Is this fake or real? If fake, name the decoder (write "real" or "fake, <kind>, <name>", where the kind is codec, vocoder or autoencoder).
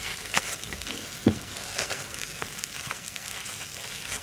fake, codec, SNAC